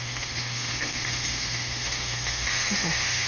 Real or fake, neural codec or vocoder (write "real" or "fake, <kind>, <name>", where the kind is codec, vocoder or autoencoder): fake, autoencoder, DAC-VAE